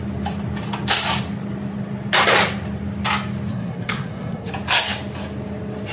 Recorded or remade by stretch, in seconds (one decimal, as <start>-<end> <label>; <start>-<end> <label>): 0.0-3.5 recorded; 3.5-4.5 remade; 4.5-5.9 recorded